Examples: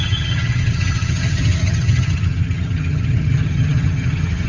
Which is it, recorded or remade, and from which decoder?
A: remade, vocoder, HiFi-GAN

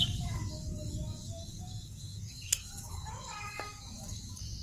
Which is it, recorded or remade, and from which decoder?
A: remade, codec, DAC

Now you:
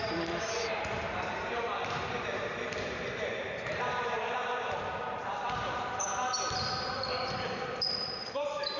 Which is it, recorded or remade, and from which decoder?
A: remade, vocoder, BigVGAN v2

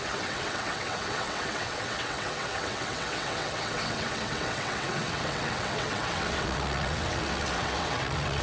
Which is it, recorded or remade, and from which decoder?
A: remade, vocoder, WaveNeXt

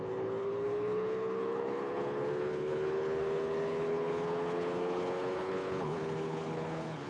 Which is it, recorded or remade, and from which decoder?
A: remade, codec, HILCodec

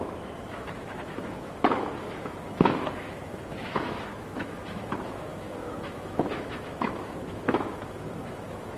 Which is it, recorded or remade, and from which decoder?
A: remade, autoencoder, DAC-VAE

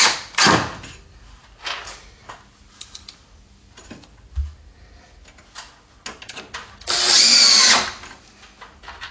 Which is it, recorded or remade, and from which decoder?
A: recorded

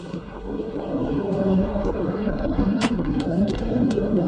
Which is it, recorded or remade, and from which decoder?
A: remade, codec, SNAC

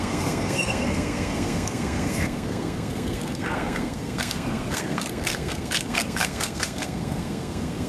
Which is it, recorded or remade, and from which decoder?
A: remade, codec, SNAC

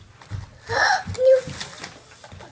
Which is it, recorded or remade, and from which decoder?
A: recorded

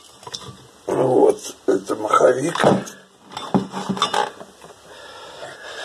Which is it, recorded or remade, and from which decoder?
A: recorded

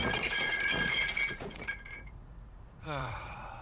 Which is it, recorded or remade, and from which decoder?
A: remade, vocoder, Vocos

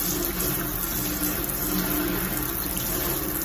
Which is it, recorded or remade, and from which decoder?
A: recorded